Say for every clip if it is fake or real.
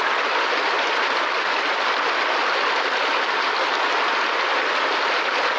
real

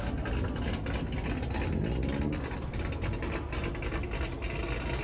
real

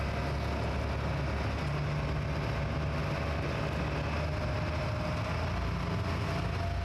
real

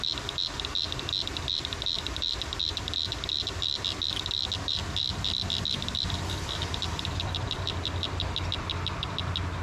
real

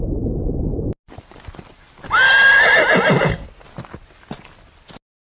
real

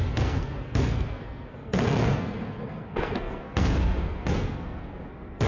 fake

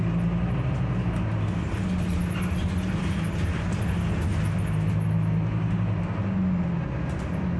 real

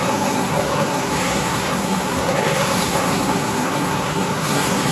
fake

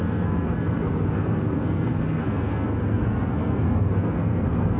fake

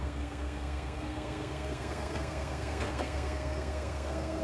fake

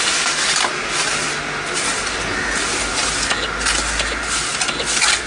real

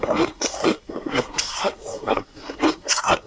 fake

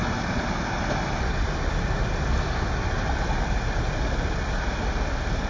real